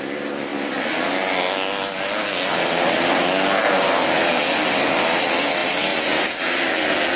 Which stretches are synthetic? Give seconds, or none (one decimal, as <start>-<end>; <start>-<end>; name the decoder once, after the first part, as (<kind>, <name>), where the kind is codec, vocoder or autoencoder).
none